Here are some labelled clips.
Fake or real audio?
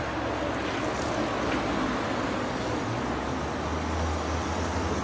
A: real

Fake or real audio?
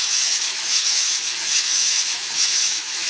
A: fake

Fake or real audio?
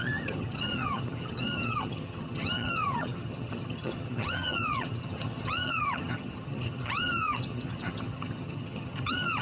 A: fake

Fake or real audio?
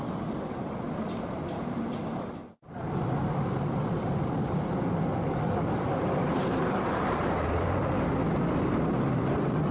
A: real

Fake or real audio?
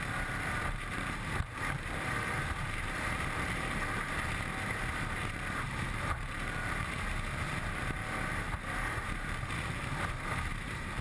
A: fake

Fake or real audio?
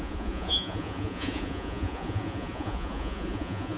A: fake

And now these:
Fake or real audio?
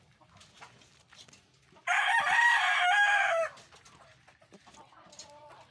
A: real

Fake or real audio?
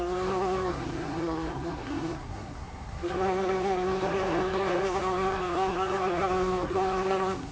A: fake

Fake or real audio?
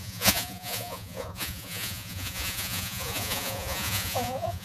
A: fake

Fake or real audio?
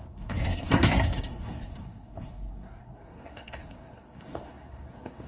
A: fake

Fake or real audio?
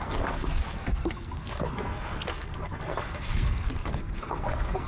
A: fake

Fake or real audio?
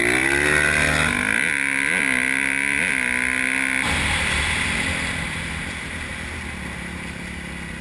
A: real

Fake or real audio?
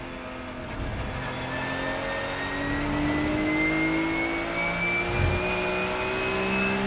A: real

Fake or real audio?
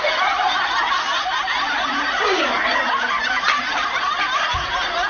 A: real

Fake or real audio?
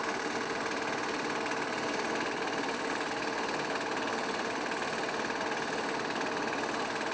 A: real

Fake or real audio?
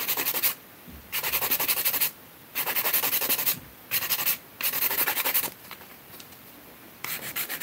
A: fake